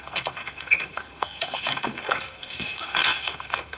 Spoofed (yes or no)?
yes